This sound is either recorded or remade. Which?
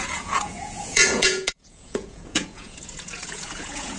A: remade